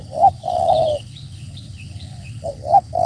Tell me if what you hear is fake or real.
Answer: fake